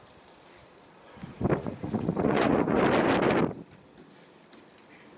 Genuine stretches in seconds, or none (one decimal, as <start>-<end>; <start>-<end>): 0.0-1.6; 2.8-5.2